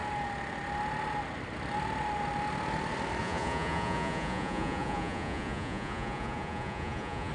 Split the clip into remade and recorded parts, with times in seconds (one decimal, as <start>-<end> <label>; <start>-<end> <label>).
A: 0.0-3.2 recorded; 3.2-7.3 remade